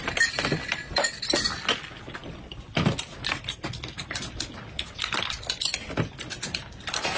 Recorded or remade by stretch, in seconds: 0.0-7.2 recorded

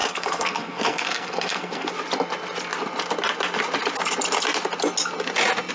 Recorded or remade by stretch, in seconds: 0.0-1.9 remade; 1.9-5.7 recorded

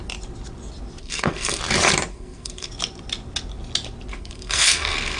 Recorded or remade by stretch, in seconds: 0.0-1.0 recorded; 1.0-1.6 remade; 1.6-2.1 recorded; 2.1-2.7 remade; 2.7-4.1 recorded; 4.1-5.2 remade